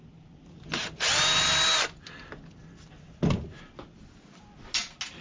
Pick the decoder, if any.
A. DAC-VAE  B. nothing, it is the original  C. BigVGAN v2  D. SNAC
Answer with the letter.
B